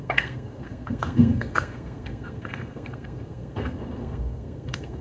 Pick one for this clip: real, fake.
fake